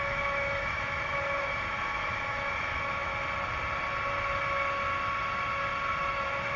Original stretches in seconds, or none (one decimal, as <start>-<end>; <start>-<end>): 3.1-6.0